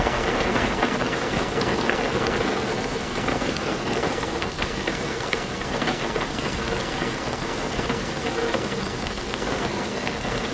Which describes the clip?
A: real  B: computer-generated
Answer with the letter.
B